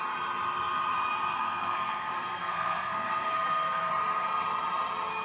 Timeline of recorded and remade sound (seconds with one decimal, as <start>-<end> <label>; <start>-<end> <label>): 0.0-1.4 recorded; 1.4-3.9 remade; 3.9-5.2 recorded